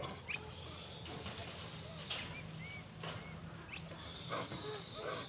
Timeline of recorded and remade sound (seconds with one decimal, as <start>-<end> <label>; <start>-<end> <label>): 0.0-5.3 recorded